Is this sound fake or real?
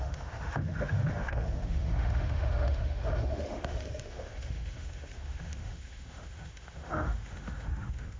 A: fake